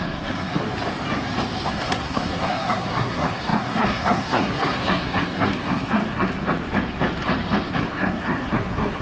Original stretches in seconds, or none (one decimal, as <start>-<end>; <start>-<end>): 0.6-1.7; 6.3-7.7